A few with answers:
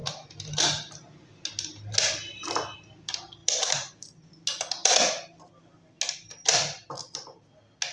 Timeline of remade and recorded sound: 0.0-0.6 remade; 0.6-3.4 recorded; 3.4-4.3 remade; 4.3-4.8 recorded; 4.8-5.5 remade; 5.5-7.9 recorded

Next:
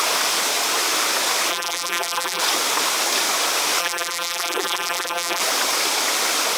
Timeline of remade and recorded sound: 0.0-1.5 recorded; 1.5-2.4 remade; 2.4-3.8 recorded; 3.8-5.4 remade; 5.4-6.6 recorded